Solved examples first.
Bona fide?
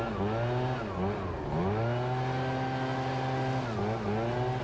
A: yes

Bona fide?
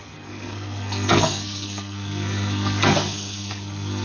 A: no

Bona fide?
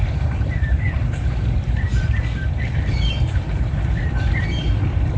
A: no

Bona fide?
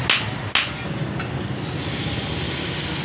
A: yes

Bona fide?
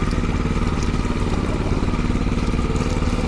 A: yes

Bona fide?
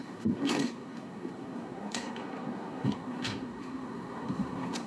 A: no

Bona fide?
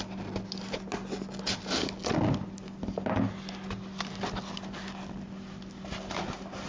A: yes